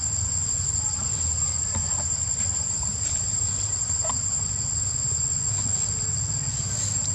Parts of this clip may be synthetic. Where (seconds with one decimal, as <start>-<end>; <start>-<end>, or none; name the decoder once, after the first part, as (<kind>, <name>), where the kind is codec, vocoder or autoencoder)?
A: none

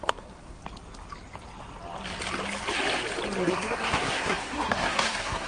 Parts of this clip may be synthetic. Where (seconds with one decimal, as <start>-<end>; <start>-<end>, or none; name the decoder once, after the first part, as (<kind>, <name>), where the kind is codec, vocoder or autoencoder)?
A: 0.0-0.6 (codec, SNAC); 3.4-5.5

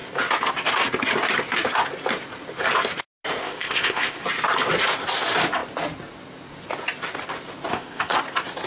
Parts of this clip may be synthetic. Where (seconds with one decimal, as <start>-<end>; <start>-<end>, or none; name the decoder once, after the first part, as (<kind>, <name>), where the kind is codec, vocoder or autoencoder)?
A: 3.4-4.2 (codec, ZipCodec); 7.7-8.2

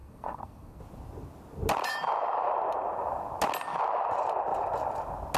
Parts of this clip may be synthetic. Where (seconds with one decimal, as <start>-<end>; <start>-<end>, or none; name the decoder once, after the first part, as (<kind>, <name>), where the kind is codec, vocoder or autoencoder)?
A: 0.0-0.8 (codec, SNAC)